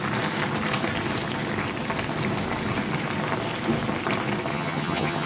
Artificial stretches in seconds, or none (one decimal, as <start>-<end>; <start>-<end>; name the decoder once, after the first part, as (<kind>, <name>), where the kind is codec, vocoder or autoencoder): 4.5-5.3 (vocoder, HiFi-GAN)